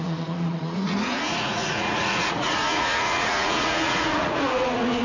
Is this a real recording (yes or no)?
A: no